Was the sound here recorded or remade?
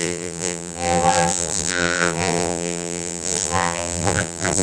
remade